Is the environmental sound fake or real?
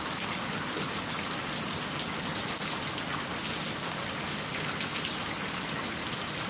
real